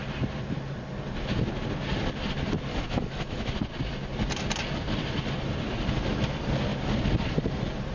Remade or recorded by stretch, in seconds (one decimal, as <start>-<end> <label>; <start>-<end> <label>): 0.0-2.7 recorded; 2.7-3.5 remade; 3.5-7.9 recorded